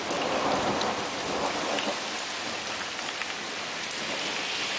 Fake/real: real